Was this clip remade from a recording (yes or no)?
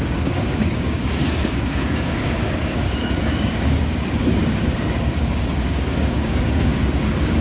yes